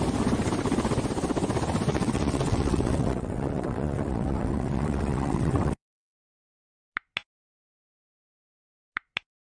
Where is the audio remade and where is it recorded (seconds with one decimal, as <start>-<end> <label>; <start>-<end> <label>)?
0.0-1.9 recorded; 1.9-6.7 remade; 6.7-9.6 recorded